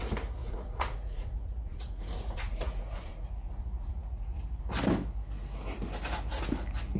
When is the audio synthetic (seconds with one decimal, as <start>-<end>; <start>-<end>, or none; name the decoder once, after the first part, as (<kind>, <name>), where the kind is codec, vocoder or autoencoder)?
0.4-4.6 (vocoder, Vocos)